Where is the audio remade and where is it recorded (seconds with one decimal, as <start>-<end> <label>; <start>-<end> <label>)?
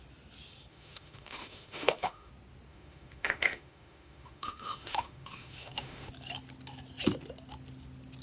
0.0-0.7 recorded; 0.7-2.3 remade; 2.3-2.7 recorded; 2.7-6.1 remade; 6.1-8.2 recorded